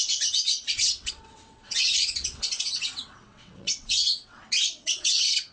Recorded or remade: remade